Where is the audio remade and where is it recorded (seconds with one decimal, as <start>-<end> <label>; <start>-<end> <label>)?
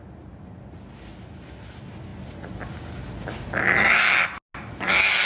0.0-5.3 recorded